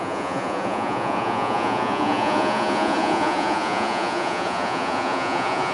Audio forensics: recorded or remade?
remade